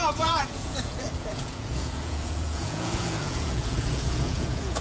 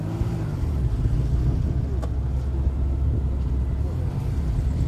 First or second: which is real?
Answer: second